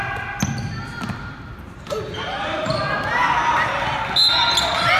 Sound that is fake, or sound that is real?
real